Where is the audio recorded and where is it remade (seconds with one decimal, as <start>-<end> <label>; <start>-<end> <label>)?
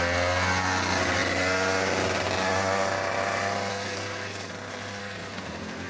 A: 0.0-3.7 recorded; 3.7-4.5 remade; 4.5-5.0 recorded; 5.0-5.9 remade